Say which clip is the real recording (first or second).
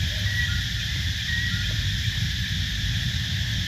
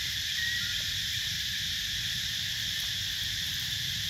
first